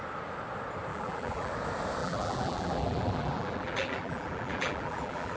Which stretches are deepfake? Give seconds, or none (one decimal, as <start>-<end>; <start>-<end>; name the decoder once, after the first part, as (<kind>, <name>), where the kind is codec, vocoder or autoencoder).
0.9-1.5 (vocoder, BigVGAN v2); 2.0-5.4